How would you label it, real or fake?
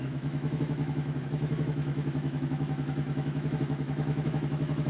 fake